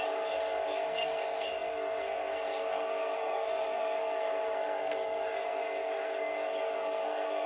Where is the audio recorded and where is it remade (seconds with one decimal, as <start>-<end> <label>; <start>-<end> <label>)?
0.0-7.5 remade